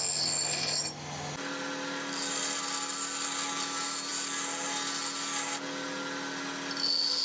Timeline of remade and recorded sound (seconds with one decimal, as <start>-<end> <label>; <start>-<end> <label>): 0.0-7.2 recorded